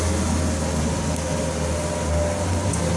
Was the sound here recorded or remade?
recorded